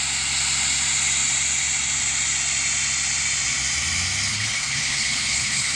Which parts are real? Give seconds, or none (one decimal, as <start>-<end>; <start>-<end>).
0.0-4.3